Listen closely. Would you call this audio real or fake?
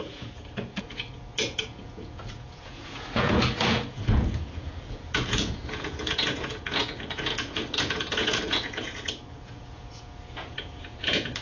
fake